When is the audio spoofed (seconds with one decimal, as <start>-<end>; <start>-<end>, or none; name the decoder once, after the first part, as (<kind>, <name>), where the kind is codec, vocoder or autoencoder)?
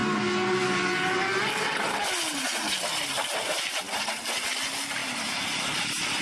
none